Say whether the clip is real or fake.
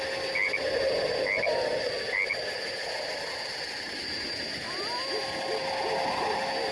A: real